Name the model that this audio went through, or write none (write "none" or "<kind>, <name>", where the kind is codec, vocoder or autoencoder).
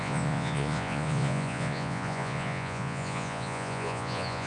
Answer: vocoder, Vocos